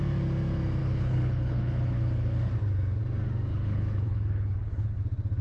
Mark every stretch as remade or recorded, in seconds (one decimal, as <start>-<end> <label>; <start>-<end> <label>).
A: 0.0-0.8 recorded; 0.8-2.5 remade; 2.5-3.5 recorded; 3.5-5.0 remade; 5.0-5.4 recorded